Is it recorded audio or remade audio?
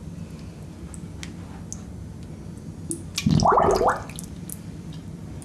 recorded